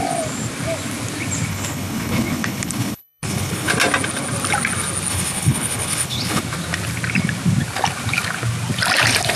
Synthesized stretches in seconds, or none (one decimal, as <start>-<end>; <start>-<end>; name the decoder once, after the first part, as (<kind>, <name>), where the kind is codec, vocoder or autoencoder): 1.5-3.7 (codec, HILCodec); 5.1-6.4